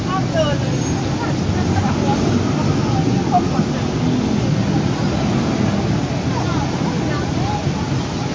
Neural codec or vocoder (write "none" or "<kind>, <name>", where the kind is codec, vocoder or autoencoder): none